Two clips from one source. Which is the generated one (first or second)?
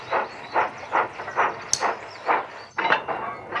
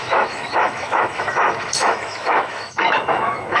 second